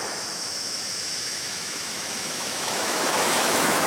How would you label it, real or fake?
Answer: fake